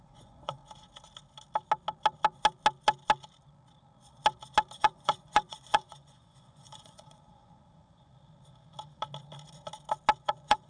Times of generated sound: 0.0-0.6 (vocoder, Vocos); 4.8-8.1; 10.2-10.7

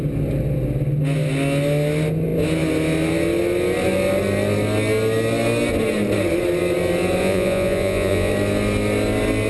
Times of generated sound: 7.2-8.3 (vocoder, Vocos)

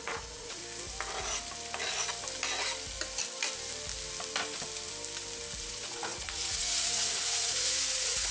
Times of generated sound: 0.0-0.6 (vocoder, Vocos); 5.6-8.3